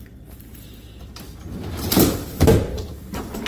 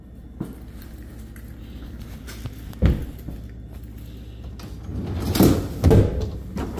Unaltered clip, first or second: second